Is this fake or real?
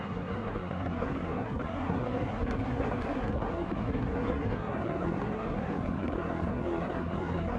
fake